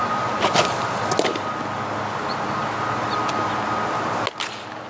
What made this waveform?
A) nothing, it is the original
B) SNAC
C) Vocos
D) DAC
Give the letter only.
A